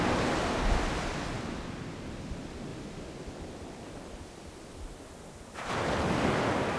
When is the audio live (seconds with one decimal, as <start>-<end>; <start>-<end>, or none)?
0.0-6.8